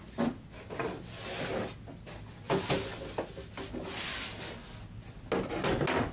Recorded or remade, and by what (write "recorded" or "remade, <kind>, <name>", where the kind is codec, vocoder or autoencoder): recorded